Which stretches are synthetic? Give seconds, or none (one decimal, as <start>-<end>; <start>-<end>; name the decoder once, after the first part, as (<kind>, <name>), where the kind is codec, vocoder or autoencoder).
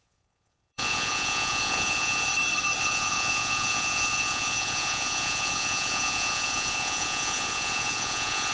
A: 0.0-2.3 (vocoder, Vocos); 2.8-8.5